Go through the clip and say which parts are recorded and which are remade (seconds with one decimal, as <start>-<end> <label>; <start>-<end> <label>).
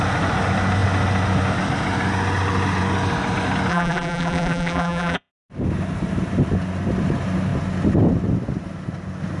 0.0-3.7 recorded; 3.7-5.3 remade; 5.3-9.4 recorded